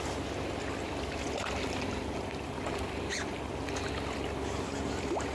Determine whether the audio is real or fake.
real